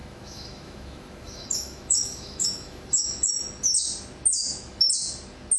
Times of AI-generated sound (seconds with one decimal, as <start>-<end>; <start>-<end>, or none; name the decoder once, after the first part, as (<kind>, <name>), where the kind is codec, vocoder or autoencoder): 0.0-3.4 (autoencoder, DAC-VAE); 4.4-4.9